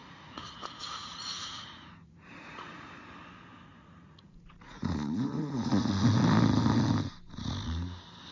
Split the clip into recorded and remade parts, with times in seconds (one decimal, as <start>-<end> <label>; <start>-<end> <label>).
0.0-3.0 remade; 3.0-3.7 recorded; 3.7-5.7 remade; 5.7-8.3 recorded